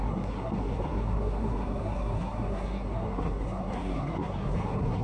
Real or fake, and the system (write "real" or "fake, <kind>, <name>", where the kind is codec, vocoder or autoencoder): fake, codec, SNAC